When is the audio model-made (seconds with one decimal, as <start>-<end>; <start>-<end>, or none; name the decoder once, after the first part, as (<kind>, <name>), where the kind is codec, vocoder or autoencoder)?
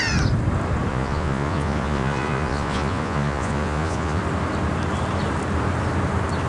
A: 0.9-4.2 (vocoder, Vocos)